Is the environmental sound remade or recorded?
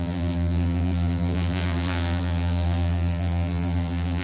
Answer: remade